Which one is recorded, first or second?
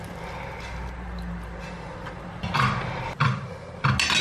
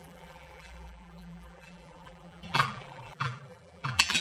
first